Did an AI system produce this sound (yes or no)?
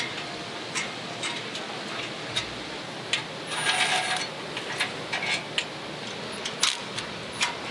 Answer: no